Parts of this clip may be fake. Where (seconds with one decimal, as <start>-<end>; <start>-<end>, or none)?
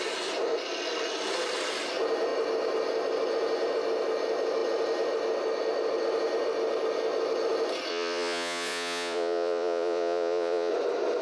7.9-10.7